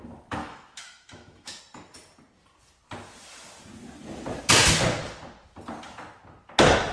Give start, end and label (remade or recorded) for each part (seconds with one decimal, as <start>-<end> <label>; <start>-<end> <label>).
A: 0.0-0.4 recorded; 0.4-1.6 remade; 1.6-6.9 recorded